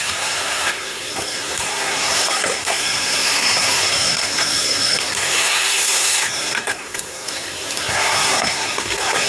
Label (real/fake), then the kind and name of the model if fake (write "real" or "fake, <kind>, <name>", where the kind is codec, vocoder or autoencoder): fake, codec, SNAC